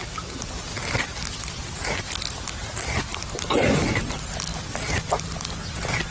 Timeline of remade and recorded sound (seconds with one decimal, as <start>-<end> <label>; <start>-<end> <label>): 0.0-6.1 recorded